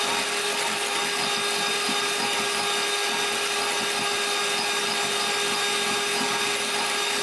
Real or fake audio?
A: real